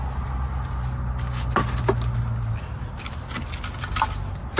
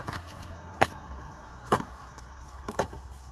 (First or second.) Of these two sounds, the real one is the first